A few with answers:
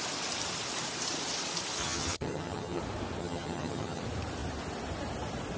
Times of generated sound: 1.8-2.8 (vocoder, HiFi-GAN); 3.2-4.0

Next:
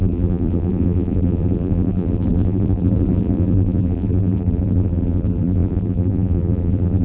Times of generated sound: 0.0-7.0 (vocoder, BigVGAN v2)

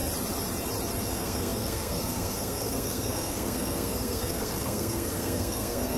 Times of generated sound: 1.1-6.0 (codec, SNAC)

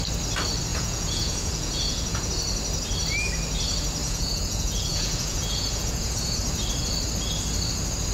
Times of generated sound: 0.7-2.3 (vocoder, Vocos); 4.0-6.4

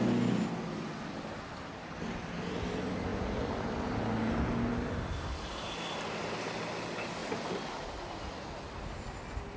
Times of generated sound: none

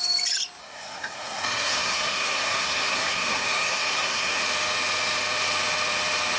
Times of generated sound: 0.6-4.4 (codec, SNAC)

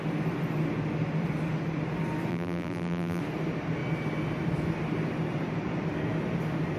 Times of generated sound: 2.3-3.2 (vocoder, BigVGAN v2)